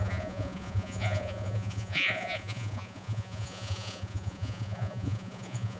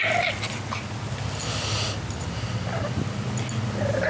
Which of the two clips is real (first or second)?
second